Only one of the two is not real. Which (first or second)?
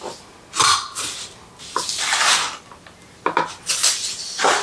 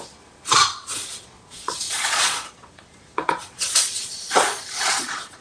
second